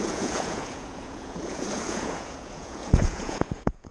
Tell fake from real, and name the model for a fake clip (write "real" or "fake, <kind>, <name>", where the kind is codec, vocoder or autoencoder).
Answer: fake, vocoder, Vocos